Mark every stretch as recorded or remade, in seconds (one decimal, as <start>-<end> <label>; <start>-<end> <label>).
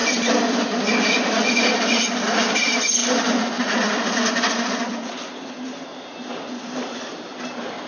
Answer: 0.0-7.9 recorded